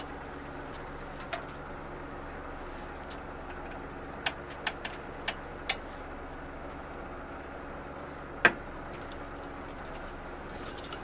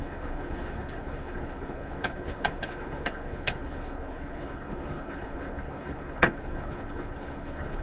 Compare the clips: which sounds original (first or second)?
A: first